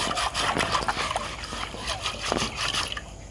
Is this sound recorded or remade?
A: recorded